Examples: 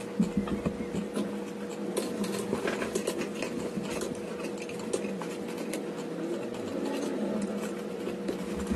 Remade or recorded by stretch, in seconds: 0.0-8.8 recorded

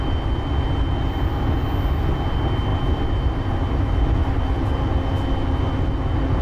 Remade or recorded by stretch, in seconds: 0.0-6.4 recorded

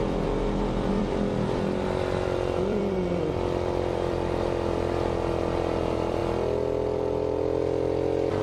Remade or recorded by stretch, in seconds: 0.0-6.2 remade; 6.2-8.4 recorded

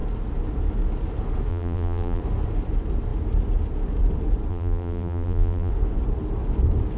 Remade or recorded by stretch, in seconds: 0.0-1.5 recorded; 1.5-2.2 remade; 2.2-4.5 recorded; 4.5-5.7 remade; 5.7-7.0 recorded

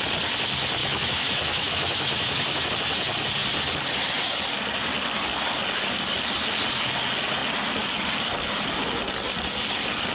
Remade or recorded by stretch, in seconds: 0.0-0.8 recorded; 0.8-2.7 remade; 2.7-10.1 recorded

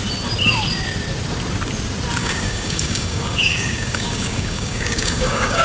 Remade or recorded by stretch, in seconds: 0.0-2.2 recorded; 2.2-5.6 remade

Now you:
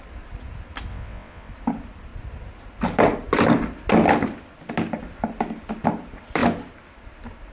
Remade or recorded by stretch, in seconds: 0.0-0.9 recorded; 0.9-1.5 remade; 1.5-7.5 recorded